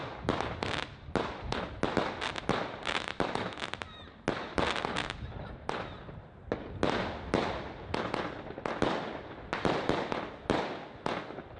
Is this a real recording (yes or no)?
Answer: yes